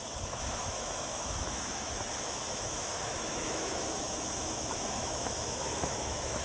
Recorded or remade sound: remade